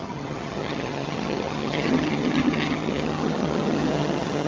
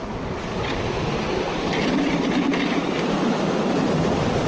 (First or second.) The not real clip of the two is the first